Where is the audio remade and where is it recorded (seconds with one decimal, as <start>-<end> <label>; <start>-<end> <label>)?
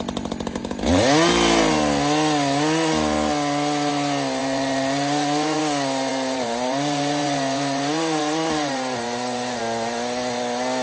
0.0-4.4 recorded; 4.4-5.6 remade; 5.6-6.1 recorded; 6.1-9.6 remade; 9.6-10.8 recorded